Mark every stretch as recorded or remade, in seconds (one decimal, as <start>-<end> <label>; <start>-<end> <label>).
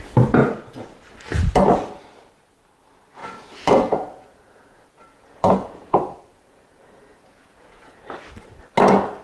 0.0-0.4 recorded; 0.4-0.9 remade; 0.9-3.2 recorded; 3.2-8.0 remade; 8.0-9.2 recorded